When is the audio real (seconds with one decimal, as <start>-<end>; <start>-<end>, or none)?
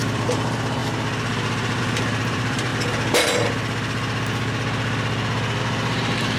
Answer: 0.8-1.8; 2.7-5.6